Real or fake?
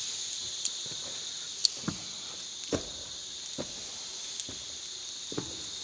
real